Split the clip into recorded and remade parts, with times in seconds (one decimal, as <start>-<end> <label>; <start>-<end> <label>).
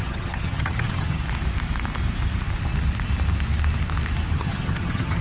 0.0-1.2 remade; 1.2-4.3 recorded; 4.3-5.2 remade